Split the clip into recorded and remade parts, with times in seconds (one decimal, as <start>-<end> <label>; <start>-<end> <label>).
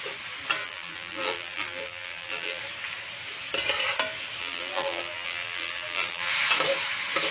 0.0-0.6 recorded; 0.6-2.6 remade; 2.6-4.4 recorded; 4.4-6.3 remade; 6.3-7.3 recorded